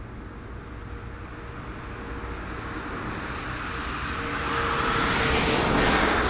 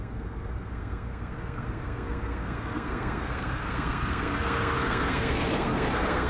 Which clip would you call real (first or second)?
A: first